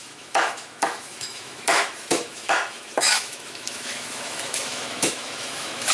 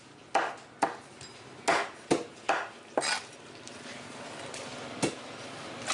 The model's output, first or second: first